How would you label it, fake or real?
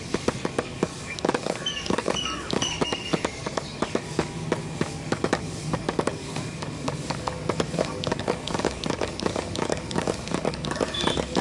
fake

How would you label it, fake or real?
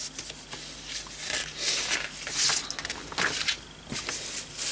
real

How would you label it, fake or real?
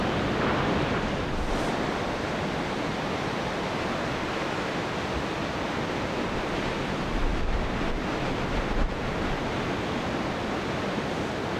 real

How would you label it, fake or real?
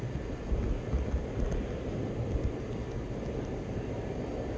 real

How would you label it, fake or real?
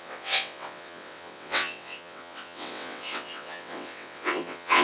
fake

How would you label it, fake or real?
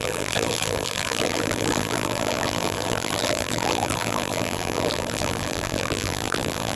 fake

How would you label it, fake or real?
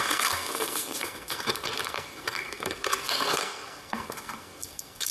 fake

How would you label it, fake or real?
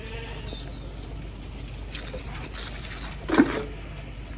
real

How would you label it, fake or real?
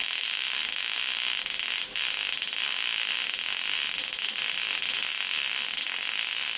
real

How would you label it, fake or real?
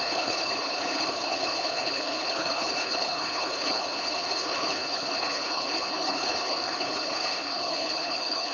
fake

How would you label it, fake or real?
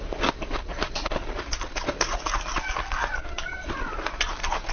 real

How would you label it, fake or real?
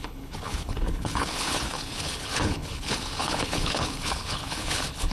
fake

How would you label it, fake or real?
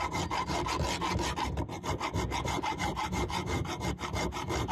real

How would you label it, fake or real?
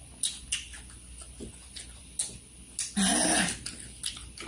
real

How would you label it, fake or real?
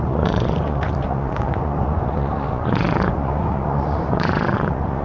fake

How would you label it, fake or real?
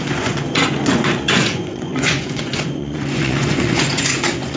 fake